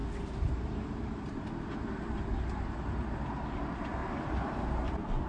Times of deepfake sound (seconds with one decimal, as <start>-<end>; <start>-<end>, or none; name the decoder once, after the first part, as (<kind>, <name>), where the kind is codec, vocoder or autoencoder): 0.0-2.2 (vocoder, BigVGAN v2); 4.0-5.3